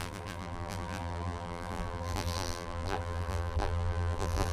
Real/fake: fake